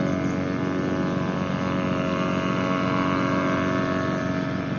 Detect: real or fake real